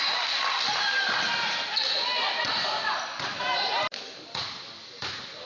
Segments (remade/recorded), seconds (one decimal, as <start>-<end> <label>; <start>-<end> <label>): 0.0-5.4 recorded